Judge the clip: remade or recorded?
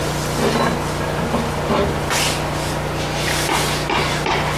recorded